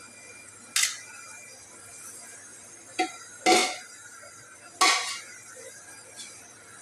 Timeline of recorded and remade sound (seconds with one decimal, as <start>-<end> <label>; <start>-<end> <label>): 0.0-6.8 recorded